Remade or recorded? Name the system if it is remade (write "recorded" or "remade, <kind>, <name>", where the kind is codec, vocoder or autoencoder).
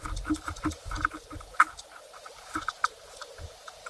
recorded